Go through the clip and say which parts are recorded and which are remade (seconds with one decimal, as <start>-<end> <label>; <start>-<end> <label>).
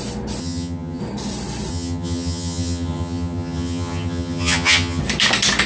0.0-0.4 recorded; 0.4-1.0 remade; 1.0-1.7 recorded; 1.7-5.0 remade; 5.0-5.7 recorded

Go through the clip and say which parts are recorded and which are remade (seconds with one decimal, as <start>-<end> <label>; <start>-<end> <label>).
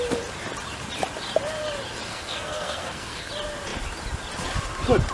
0.0-2.1 recorded; 2.1-3.3 remade; 3.3-5.1 recorded